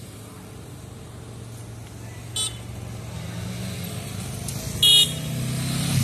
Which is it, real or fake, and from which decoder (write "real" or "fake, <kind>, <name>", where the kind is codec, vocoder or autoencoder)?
real